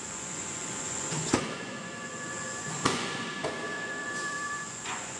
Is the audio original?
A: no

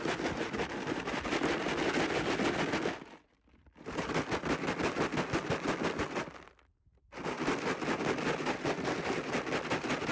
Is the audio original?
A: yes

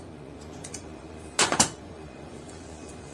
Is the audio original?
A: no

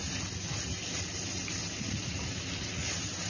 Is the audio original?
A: yes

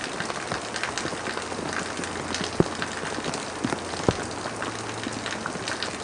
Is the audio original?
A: yes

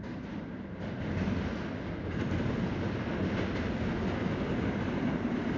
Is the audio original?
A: yes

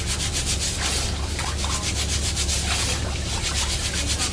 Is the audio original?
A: yes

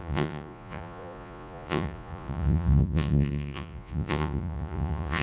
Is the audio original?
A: no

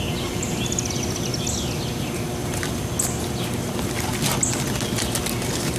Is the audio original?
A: yes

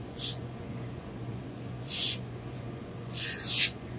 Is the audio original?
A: no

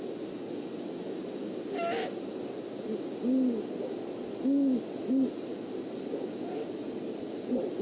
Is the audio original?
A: yes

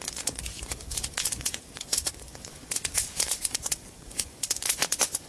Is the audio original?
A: no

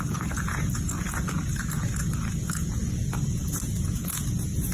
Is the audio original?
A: no